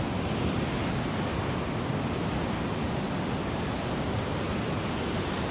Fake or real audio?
real